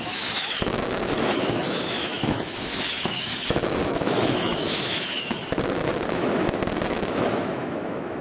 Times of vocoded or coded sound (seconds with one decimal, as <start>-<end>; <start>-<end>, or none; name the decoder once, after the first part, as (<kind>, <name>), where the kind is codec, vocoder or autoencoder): 0.0-8.2 (autoencoder, DAC-VAE)